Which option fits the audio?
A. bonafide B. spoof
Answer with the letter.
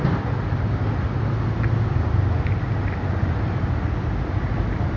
A